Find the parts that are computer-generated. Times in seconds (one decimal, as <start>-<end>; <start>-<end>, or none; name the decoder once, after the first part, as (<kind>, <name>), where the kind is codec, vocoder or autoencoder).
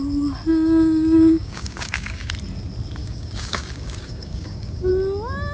0.5-2.3 (codec, DAC); 3.0-4.9